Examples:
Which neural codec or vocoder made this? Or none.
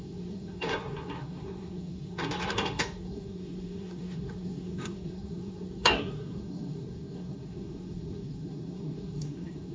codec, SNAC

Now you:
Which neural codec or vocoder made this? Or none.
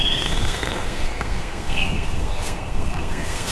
codec, SNAC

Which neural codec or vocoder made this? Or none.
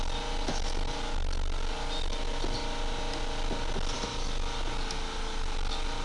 none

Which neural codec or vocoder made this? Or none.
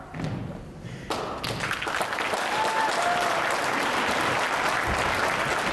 none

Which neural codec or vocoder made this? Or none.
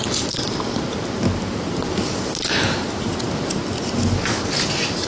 none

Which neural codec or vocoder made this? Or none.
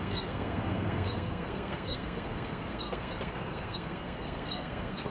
codec, SNAC